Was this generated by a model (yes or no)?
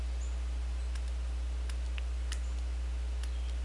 no